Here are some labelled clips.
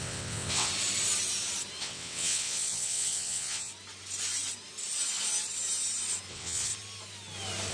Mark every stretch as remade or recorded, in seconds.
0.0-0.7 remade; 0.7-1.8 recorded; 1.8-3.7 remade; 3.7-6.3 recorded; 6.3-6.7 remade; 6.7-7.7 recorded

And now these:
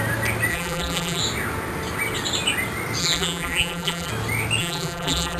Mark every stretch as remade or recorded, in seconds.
0.0-0.5 recorded; 0.5-1.2 remade; 1.2-3.0 recorded; 3.0-4.1 remade; 4.1-4.6 recorded; 4.6-5.4 remade

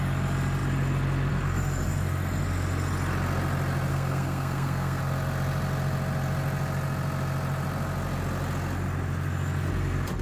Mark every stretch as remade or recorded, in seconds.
0.0-3.9 recorded; 3.9-5.0 remade; 5.0-10.2 recorded

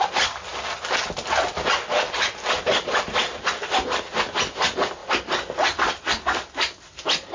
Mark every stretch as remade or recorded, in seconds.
0.0-7.3 recorded

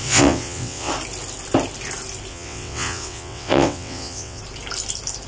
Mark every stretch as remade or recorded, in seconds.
0.0-0.9 remade; 0.9-2.3 recorded; 2.3-4.4 remade; 4.4-5.3 recorded

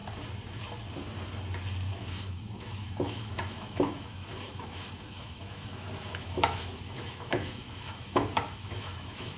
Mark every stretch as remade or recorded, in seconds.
0.0-1.9 recorded; 1.9-9.4 remade